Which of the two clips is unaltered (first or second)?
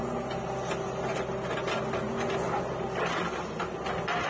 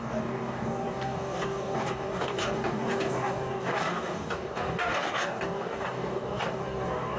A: first